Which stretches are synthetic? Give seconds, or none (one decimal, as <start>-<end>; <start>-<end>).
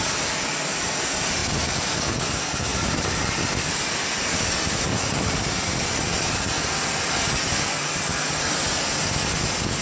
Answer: 2.7-3.5; 4.2-5.4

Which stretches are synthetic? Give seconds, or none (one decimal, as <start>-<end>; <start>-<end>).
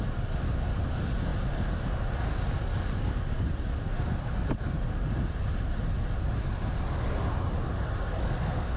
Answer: 8.2-8.8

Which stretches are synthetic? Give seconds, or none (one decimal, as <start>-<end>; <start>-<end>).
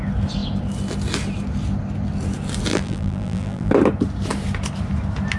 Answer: 2.7-3.7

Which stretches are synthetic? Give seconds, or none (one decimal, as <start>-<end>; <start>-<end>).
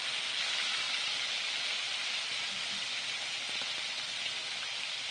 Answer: none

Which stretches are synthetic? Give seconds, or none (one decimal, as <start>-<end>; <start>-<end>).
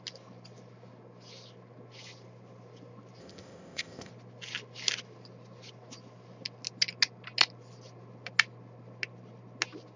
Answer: 3.2-4.1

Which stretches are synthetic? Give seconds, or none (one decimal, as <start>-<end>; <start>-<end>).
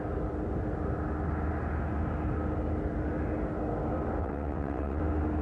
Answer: 4.2-5.0